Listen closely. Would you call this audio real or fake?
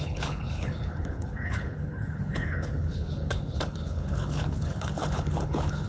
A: fake